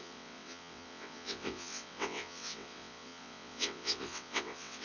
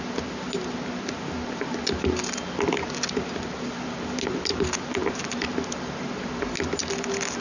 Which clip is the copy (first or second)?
first